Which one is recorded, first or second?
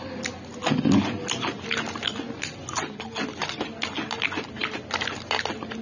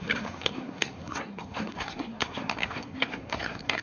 first